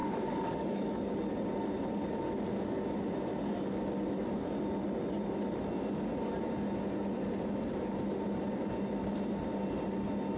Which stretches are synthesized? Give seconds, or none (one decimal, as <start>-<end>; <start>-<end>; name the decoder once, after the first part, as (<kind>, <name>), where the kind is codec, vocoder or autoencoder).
0.0-1.0 (codec, DAC)